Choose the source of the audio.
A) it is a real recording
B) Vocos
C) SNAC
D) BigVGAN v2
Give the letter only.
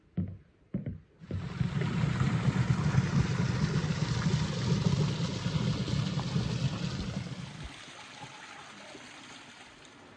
A